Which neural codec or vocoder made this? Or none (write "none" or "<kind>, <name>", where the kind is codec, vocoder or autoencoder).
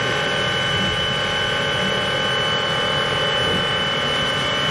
vocoder, BigVGAN v2